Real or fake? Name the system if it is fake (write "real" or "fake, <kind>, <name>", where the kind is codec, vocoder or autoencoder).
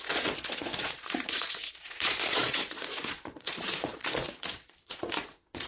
fake, vocoder, Vocos